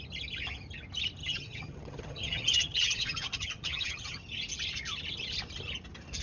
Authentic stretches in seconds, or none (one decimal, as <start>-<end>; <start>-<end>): 0.0-1.2; 4.2-6.2